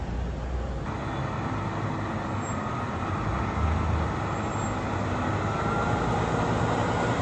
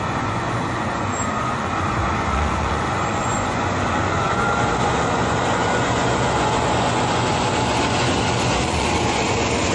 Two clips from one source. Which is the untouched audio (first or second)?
first